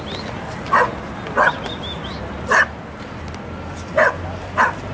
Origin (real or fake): real